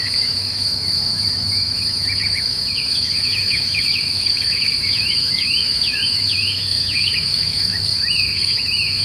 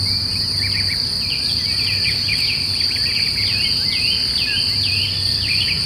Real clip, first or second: second